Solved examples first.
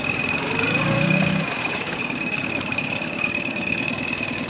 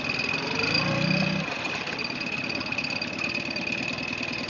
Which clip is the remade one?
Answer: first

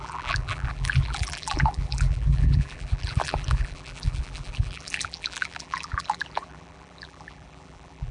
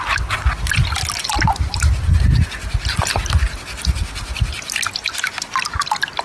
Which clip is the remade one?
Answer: first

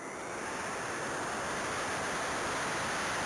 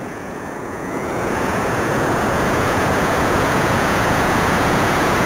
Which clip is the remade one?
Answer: second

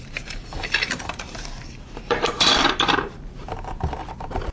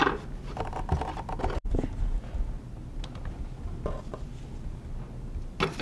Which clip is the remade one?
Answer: first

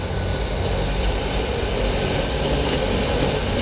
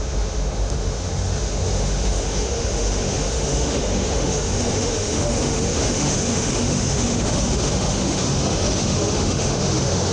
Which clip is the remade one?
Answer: second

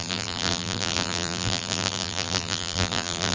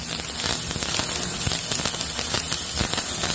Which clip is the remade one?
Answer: first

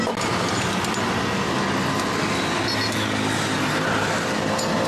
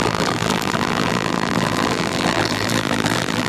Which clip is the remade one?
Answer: second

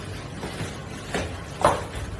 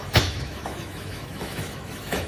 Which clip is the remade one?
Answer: second